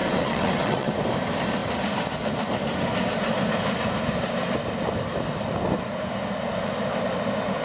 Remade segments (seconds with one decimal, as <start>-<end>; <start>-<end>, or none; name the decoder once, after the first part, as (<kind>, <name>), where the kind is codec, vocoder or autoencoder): 0.0-0.9 (vocoder, WaveNeXt)